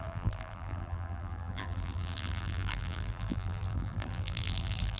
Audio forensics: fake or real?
fake